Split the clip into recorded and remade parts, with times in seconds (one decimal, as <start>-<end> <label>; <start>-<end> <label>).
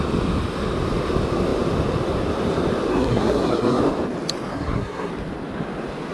0.0-2.9 recorded; 2.9-3.8 remade; 3.8-4.5 recorded; 4.5-5.1 remade; 5.1-6.1 recorded